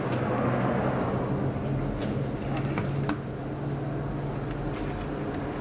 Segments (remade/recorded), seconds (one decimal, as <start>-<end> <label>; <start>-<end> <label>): 0.0-5.6 recorded